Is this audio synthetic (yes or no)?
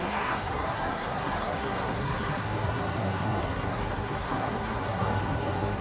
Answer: yes